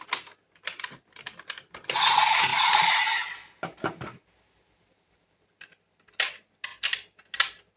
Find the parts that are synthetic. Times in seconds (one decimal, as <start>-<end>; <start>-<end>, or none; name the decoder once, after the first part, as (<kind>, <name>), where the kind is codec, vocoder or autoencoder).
2.5-5.7 (vocoder, BigVGAN v2)